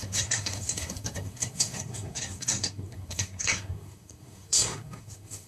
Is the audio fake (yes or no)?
yes